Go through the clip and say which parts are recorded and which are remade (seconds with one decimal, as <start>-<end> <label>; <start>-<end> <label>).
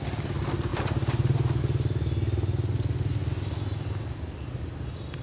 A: 0.0-0.7 recorded; 0.7-1.6 remade; 1.6-5.2 recorded